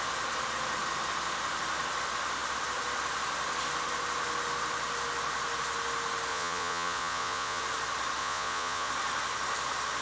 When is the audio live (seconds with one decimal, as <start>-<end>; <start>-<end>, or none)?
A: 0.0-6.3; 7.6-8.2; 8.9-10.0